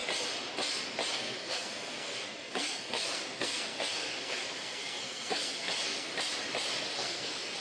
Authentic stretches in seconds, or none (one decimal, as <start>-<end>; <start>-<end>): 0.0-1.1; 6.1-6.9